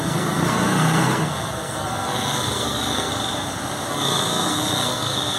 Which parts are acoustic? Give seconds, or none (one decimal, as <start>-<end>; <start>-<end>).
3.1-3.9